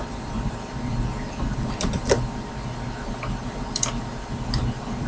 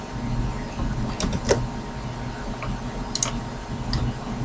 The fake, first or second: first